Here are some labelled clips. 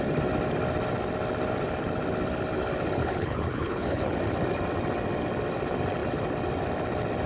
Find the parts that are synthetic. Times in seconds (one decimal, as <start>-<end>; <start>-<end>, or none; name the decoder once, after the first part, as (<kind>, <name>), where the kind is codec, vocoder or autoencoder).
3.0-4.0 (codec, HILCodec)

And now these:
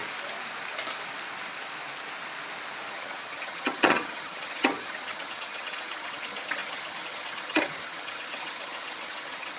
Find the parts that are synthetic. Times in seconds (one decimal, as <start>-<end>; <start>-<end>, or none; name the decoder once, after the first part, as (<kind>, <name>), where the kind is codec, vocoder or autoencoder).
2.9-9.6 (vocoder, HiFi-GAN)

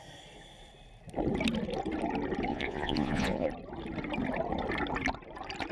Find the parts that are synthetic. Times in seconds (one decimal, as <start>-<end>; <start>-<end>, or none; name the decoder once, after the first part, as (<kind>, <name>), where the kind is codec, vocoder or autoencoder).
2.5-3.5 (vocoder, Vocos)